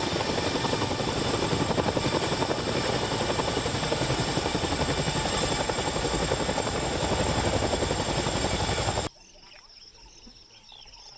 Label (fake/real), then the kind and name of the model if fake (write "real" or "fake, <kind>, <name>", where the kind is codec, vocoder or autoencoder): fake, vocoder, BigVGAN v2